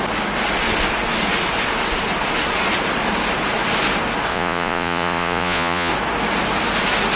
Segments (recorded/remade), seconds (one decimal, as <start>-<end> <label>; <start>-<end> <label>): 0.0-4.3 recorded; 4.3-5.9 remade; 5.9-7.2 recorded